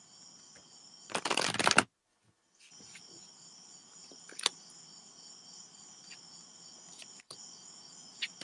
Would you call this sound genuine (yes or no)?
yes